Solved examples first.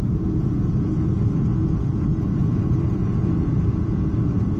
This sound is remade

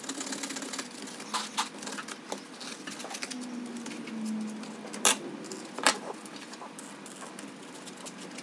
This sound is recorded